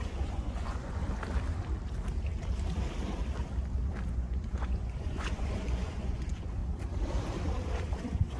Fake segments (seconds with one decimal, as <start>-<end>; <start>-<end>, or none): 0.0-1.0; 4.1-6.6; 8.0-8.4